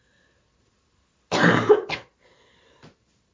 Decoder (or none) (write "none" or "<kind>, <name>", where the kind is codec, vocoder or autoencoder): none